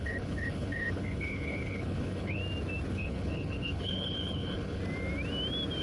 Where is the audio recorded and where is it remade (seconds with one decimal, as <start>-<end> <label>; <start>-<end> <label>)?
0.0-2.4 remade; 2.4-2.9 recorded; 2.9-4.8 remade; 4.8-5.8 recorded